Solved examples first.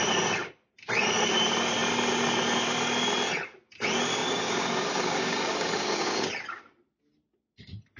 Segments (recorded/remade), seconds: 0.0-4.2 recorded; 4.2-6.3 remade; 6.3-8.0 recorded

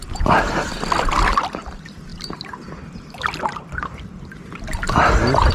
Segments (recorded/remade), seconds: 0.0-1.4 recorded; 1.4-2.1 remade; 2.1-5.5 recorded